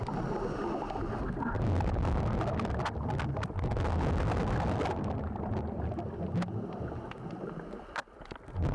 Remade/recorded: recorded